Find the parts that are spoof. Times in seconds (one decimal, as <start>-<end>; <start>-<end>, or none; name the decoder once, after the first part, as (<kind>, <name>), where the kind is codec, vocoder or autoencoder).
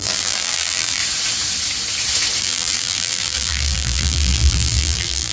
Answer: 0.0-1.0 (vocoder, BigVGAN v2); 2.4-5.3